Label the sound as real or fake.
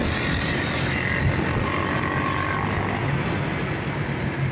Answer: real